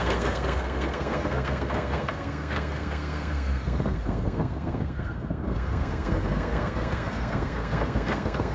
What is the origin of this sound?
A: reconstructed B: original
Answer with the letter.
A